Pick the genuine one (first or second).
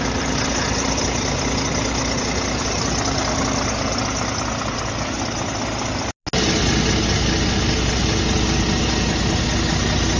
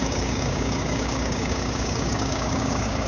first